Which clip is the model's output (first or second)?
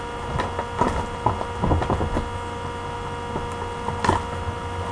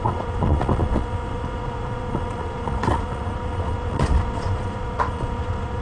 second